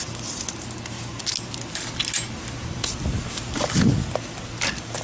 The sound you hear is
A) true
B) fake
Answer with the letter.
A